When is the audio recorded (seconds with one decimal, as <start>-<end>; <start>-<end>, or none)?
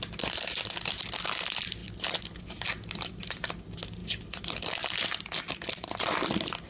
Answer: 0.0-1.8; 2.4-4.0; 5.4-6.7